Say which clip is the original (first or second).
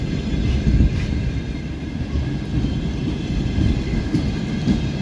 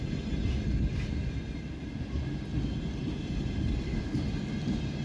second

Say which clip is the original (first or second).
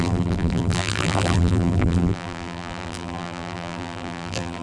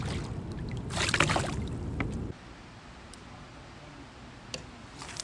second